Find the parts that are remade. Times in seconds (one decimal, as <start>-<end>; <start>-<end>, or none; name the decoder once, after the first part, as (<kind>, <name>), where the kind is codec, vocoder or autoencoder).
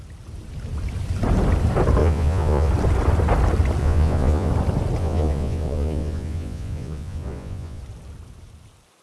2.0-2.7 (vocoder, Vocos); 3.8-4.5; 5.0-7.8